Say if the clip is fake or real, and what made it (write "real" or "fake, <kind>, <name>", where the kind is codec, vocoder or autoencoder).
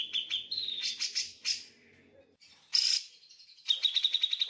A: real